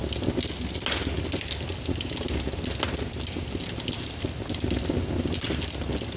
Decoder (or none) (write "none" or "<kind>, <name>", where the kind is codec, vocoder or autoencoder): none